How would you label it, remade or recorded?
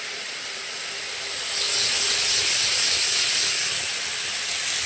recorded